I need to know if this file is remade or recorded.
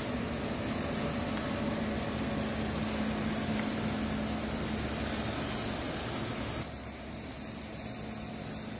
recorded